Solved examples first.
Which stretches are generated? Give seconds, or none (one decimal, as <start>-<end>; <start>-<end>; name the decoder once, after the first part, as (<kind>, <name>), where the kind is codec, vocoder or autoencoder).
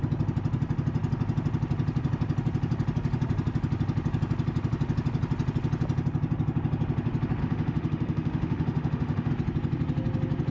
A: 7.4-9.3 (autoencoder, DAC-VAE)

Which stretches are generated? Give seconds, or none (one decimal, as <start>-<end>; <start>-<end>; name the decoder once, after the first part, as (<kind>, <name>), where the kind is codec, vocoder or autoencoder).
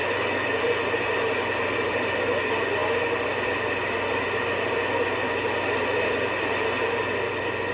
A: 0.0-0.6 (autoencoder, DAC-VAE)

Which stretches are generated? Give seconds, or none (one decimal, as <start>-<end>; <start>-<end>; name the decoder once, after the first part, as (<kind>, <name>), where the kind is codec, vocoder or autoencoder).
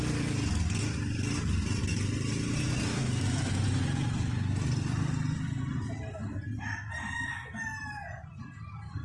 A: 2.9-3.6 (autoencoder, DAC-VAE)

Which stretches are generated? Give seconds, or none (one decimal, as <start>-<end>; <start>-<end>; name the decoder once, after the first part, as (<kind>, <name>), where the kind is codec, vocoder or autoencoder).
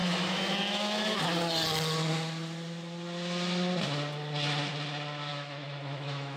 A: 0.0-1.2 (autoencoder, DAC-VAE); 5.3-6.4